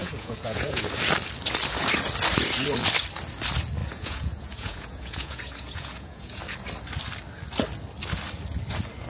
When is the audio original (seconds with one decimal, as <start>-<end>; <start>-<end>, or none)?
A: 0.8-3.8; 6.4-9.1